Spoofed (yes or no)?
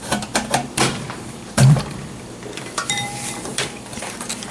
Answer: yes